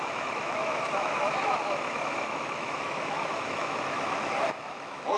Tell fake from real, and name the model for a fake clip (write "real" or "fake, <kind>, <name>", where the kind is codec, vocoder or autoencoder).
fake, autoencoder, DAC-VAE